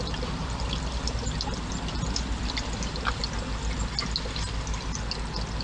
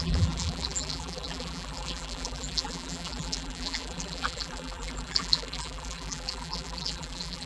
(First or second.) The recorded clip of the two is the first